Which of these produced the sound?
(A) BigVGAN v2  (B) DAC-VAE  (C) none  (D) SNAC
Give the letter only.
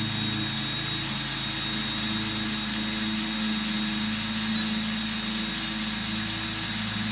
C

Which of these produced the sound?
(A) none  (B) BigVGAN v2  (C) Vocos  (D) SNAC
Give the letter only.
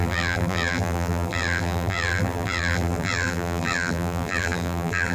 B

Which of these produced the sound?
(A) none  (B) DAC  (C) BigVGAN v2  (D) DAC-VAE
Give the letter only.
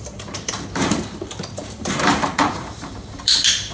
C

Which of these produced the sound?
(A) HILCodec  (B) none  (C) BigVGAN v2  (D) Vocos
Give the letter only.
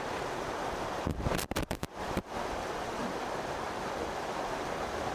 C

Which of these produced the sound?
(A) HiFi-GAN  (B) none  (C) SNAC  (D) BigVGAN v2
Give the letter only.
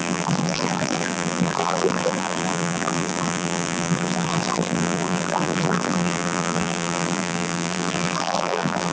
D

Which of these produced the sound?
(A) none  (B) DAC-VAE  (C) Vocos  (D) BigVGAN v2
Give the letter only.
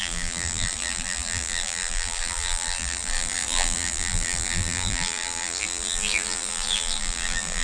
D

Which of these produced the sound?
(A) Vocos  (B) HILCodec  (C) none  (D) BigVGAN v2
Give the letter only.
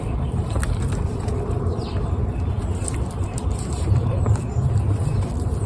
D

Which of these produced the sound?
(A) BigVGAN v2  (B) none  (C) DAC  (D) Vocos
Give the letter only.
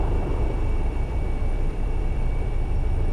A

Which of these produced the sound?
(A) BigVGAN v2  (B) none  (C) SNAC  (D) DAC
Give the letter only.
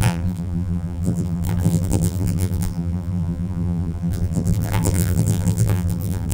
A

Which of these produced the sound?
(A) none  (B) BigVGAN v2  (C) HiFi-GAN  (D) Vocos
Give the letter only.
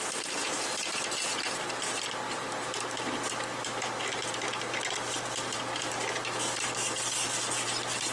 A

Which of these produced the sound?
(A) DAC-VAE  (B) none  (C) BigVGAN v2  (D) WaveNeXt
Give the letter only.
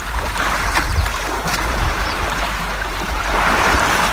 C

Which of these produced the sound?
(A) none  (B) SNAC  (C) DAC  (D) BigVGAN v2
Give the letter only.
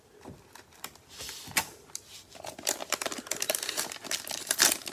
A